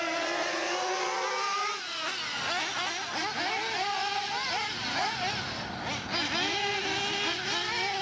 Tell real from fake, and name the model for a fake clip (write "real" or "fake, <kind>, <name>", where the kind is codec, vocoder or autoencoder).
real